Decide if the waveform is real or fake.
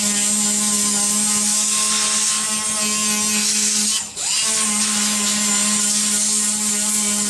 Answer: real